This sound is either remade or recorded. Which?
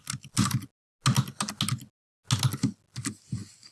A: recorded